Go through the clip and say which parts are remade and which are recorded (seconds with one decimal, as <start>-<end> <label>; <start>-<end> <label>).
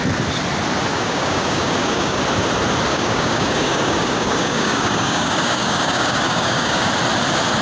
0.0-0.9 recorded; 0.9-2.2 remade; 2.2-2.9 recorded; 2.9-6.9 remade; 6.9-7.6 recorded